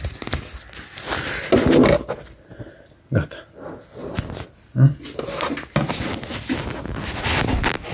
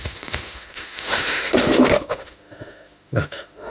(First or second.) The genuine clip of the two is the first